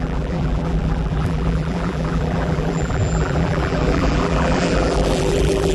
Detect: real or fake fake